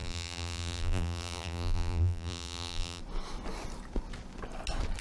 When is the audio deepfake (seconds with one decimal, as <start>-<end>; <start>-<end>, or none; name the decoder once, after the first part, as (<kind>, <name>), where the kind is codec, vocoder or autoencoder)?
0.0-3.0 (vocoder, BigVGAN v2)